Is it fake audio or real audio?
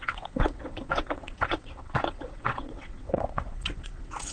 fake